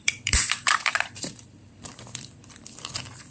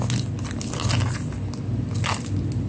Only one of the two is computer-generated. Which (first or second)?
first